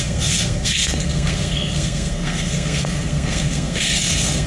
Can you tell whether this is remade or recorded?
remade